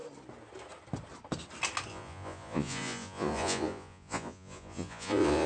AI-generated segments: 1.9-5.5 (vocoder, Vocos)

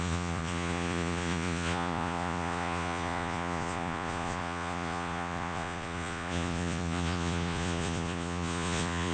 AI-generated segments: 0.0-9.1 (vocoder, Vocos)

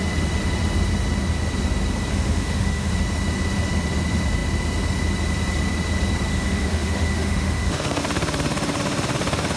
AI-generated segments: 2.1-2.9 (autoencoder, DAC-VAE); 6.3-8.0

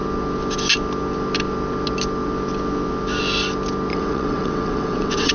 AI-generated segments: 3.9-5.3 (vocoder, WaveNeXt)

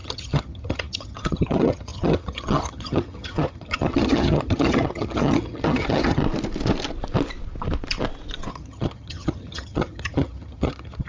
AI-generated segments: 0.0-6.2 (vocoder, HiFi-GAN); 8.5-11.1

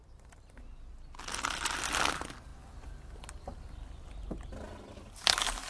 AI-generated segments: none